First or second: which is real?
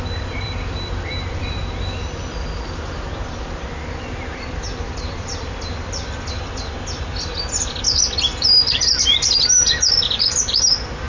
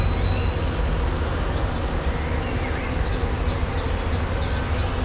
second